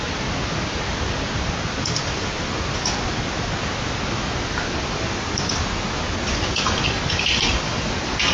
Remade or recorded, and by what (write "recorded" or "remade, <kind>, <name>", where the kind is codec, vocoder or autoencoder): recorded